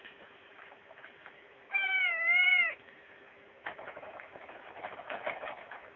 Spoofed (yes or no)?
yes